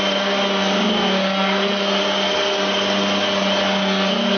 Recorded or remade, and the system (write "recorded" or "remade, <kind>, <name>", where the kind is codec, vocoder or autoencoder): recorded